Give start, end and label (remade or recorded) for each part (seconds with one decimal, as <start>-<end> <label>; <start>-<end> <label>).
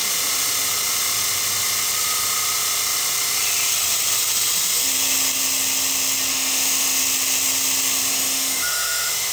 0.0-6.3 recorded; 6.3-7.0 remade; 7.0-8.1 recorded; 8.1-9.3 remade